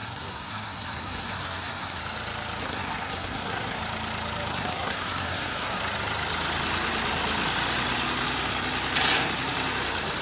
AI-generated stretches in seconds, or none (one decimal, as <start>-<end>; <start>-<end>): 0.0-2.0; 2.6-3.8; 4.5-5.8